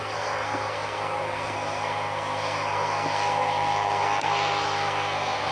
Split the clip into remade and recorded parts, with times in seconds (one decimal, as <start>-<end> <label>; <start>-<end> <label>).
0.0-5.5 remade

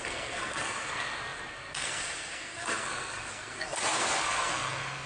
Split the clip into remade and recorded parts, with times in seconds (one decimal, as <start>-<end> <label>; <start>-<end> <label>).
0.0-5.1 remade

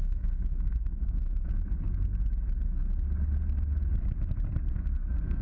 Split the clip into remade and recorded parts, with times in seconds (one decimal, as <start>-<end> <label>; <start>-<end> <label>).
0.0-1.5 remade; 1.5-4.7 recorded; 4.7-5.4 remade